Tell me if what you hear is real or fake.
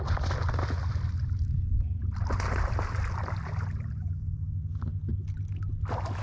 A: real